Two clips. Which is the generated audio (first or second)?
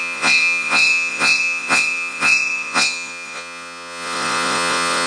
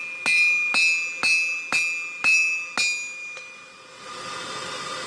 first